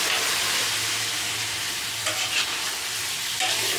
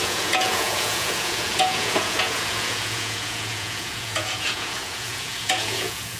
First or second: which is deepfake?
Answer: second